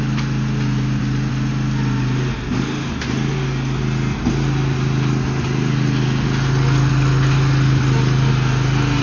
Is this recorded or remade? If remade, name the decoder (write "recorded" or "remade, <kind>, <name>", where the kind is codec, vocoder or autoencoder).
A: recorded